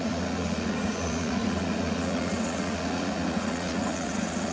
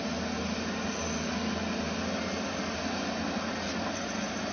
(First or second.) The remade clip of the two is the first